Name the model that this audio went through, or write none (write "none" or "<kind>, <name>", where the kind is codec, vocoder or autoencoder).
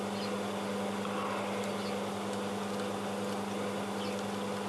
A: none